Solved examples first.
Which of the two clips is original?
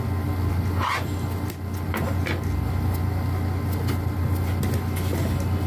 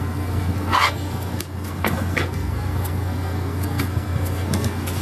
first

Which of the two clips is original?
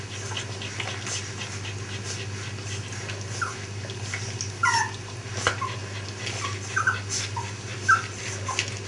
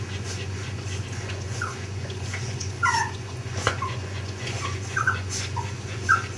first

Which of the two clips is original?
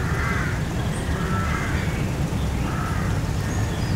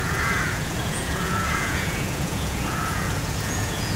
first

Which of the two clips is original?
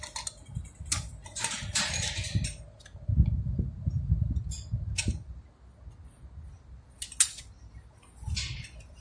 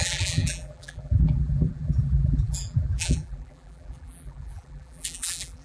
first